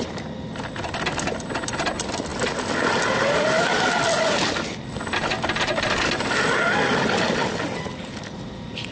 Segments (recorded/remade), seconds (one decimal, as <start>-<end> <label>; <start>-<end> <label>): 0.0-8.9 recorded